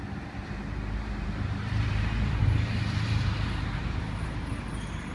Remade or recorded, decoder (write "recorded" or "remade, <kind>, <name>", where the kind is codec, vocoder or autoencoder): remade, vocoder, BigVGAN v2